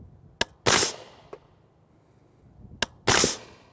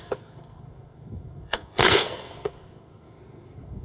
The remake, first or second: second